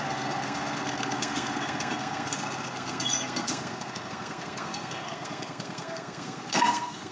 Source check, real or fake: fake